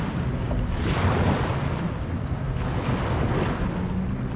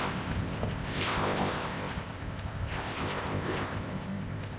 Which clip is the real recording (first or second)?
first